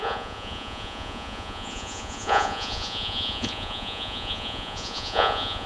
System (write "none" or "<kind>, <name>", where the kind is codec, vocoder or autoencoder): vocoder, Vocos